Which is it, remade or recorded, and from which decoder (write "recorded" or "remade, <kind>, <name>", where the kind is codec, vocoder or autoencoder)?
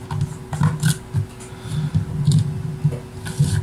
recorded